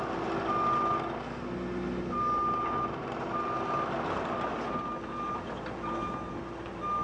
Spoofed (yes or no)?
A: no